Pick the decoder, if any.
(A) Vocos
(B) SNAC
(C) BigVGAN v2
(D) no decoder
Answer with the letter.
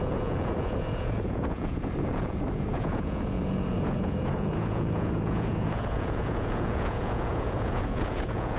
A